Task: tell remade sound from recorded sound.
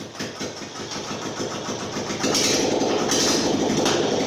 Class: recorded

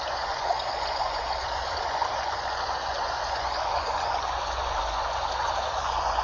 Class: remade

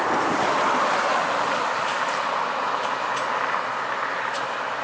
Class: recorded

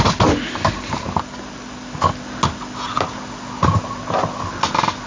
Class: recorded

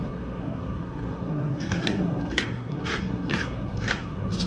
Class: remade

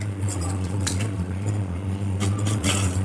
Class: remade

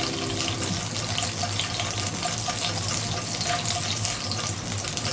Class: recorded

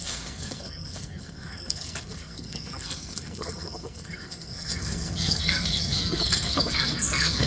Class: remade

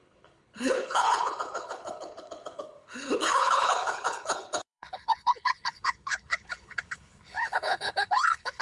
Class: remade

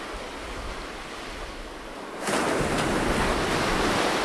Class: recorded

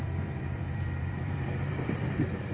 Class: remade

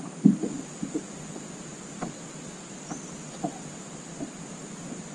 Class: recorded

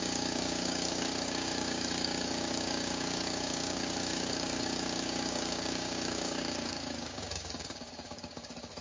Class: remade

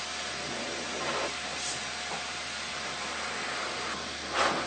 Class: recorded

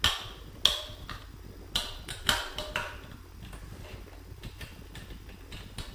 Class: recorded